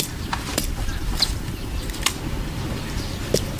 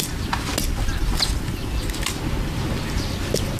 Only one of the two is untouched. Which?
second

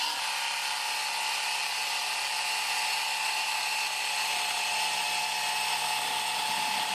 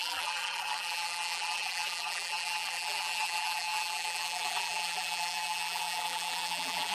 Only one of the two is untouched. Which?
first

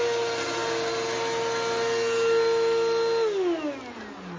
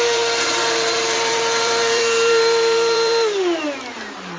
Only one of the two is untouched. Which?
first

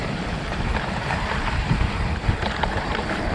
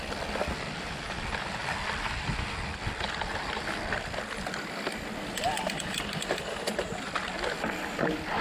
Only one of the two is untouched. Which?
second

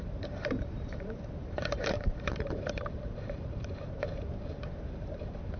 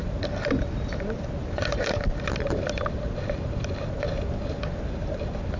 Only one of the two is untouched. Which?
second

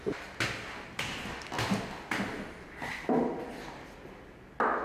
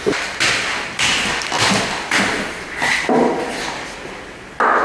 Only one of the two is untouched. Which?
first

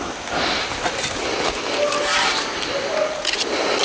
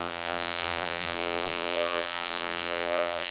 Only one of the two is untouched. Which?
first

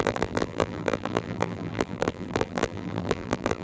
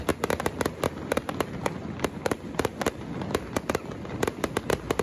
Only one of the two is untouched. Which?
second